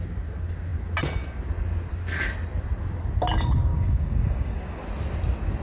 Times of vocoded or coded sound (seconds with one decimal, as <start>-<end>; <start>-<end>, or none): 3.7-4.8